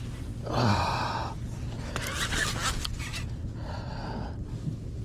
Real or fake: real